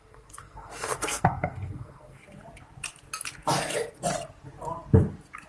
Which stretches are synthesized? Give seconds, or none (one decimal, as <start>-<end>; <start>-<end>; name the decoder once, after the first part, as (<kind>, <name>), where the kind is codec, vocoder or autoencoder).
0.0-2.2 (codec, SNAC)